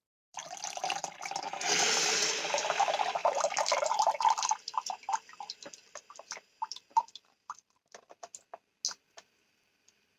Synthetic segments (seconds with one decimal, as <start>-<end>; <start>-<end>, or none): 0.0-0.4; 1.3-8.3; 9.7-10.2